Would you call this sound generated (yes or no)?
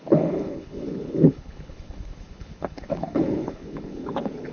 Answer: yes